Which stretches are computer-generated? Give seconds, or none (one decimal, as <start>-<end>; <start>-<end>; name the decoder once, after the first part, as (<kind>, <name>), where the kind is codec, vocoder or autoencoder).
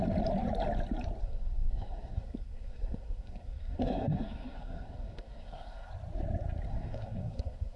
1.2-5.9 (codec, SNAC); 6.7-7.8